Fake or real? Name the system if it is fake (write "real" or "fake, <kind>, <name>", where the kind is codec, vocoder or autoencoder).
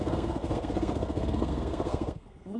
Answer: fake, codec, SNAC